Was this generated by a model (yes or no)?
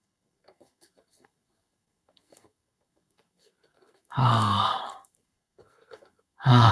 yes